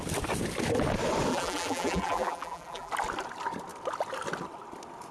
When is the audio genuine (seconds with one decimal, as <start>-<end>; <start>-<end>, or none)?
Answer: 0.0-1.3; 2.9-5.1